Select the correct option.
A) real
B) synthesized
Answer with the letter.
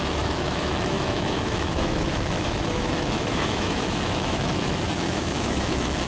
B